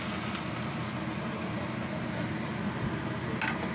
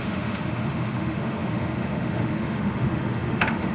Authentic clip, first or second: first